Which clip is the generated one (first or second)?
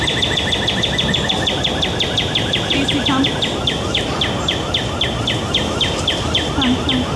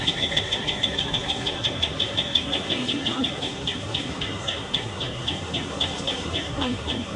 second